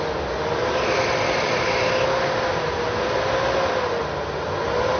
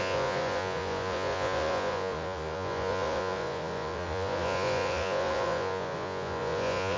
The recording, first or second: first